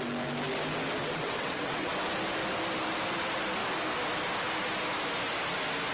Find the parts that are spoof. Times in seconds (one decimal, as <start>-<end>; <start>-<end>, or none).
1.0-1.9